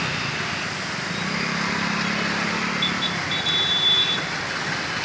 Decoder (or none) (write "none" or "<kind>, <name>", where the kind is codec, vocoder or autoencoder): none